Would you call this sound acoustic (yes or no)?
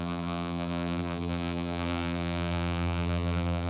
no